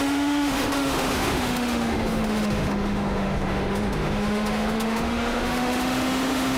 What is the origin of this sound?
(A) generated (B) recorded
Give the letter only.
A